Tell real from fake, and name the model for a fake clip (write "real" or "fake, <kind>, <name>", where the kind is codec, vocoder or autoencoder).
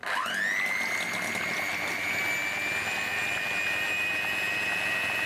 real